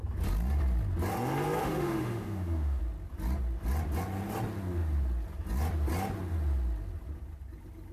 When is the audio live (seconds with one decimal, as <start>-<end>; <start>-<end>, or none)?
0.0-1.6; 2.8-7.9